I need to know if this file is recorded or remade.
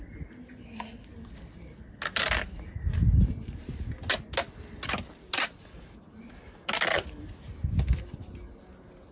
recorded